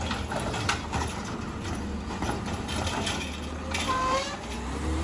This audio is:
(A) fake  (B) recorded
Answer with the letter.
B